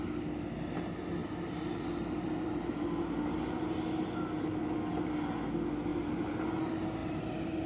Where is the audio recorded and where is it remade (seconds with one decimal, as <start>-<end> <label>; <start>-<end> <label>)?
0.0-1.2 recorded; 1.2-2.5 remade; 2.5-5.9 recorded; 5.9-6.4 remade; 6.4-7.0 recorded; 7.0-7.7 remade